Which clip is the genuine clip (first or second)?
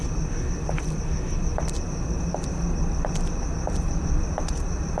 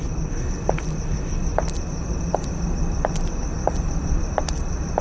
first